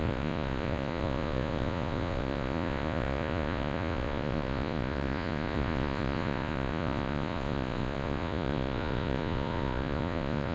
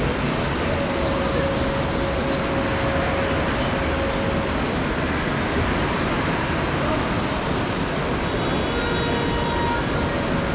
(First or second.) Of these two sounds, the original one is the second